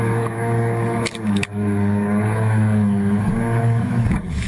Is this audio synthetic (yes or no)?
yes